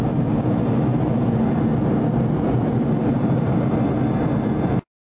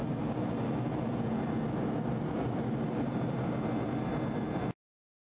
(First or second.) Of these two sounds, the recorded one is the second